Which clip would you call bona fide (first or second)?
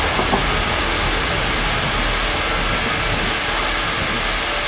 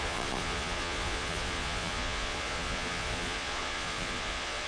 first